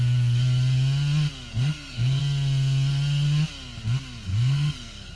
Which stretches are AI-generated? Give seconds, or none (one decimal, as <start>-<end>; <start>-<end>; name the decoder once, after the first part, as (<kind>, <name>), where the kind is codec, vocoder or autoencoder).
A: 1.5-2.2 (codec, SNAC); 4.3-5.2